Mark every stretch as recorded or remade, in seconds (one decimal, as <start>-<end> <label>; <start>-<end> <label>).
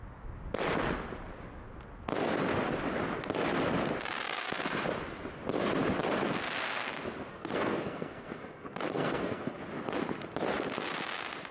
0.0-7.3 recorded; 7.3-9.6 remade; 9.6-11.5 recorded